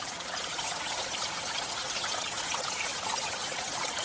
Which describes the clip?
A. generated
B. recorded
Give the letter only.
A